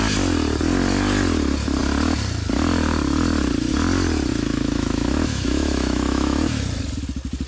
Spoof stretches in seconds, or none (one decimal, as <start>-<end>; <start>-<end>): 4.3-6.6